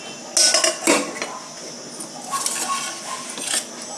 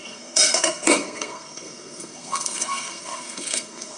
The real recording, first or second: first